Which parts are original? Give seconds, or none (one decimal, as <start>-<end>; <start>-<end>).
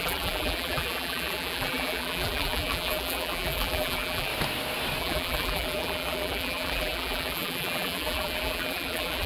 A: 4.3-5.0